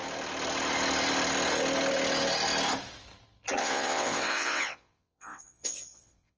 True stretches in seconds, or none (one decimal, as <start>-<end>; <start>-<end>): 0.0-3.6